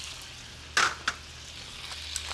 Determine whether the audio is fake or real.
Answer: real